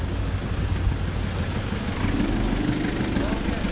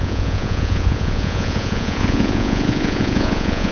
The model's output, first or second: second